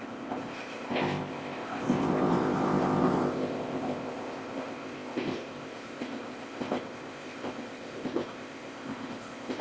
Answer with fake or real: fake